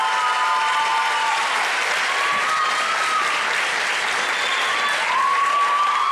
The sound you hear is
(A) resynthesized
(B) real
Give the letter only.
B